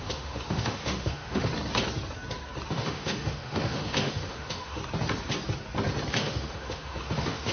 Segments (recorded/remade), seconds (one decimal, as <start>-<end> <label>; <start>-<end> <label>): 0.0-1.5 remade; 1.5-2.7 recorded; 2.7-4.8 remade; 4.8-6.1 recorded; 6.1-7.5 remade